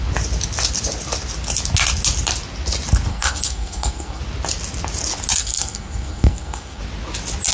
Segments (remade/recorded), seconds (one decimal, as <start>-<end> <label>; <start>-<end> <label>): 0.0-3.1 recorded; 3.1-4.2 remade; 4.2-5.4 recorded; 5.4-6.8 remade; 6.8-7.5 recorded